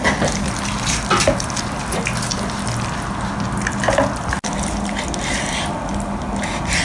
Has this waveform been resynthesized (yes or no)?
no